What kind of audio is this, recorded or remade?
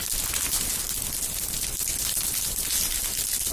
recorded